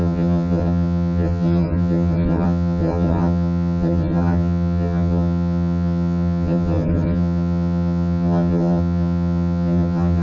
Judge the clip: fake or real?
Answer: fake